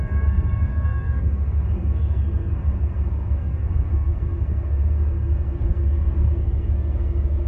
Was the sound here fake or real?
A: fake